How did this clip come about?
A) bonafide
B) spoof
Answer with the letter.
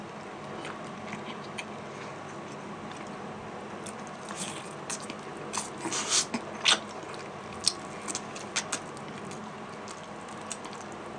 A